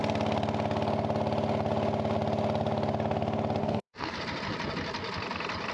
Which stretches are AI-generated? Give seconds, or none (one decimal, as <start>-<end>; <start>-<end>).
3.6-4.2